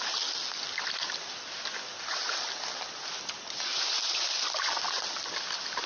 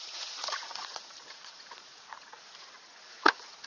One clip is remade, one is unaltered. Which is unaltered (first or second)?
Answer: first